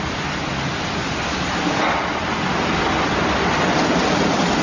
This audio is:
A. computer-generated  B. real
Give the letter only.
B